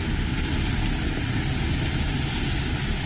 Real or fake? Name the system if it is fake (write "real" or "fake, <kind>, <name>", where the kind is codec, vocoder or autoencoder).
fake, vocoder, BigVGAN v2